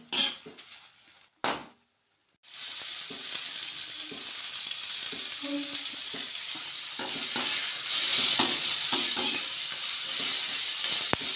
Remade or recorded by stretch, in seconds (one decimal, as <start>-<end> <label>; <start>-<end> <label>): 0.0-8.1 recorded; 8.1-9.2 remade; 9.2-11.4 recorded